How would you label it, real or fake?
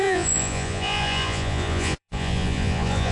fake